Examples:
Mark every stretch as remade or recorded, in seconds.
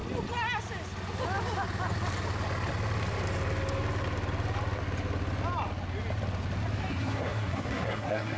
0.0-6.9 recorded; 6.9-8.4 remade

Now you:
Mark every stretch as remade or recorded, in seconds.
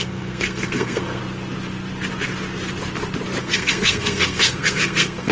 0.0-1.2 remade; 1.2-3.4 recorded; 3.4-5.3 remade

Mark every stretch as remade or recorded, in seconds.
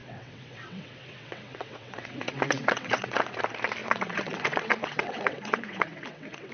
0.0-3.4 remade; 3.4-3.8 recorded; 3.8-6.5 remade